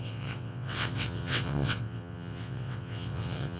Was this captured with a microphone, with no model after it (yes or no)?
no